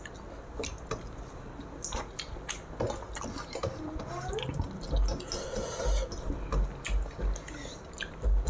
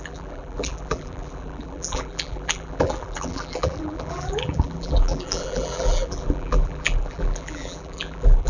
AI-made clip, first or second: second